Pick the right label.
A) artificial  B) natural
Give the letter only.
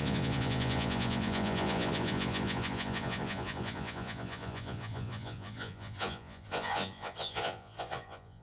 A